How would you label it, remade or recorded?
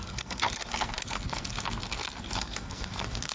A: remade